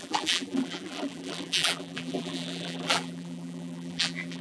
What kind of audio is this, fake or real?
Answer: fake